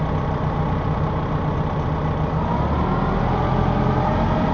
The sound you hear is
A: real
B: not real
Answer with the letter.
A